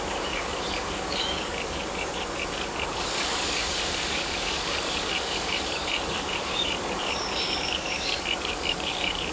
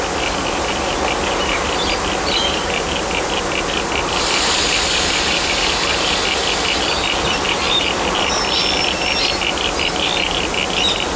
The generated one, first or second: first